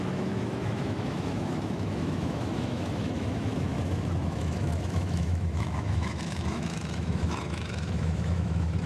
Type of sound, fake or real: fake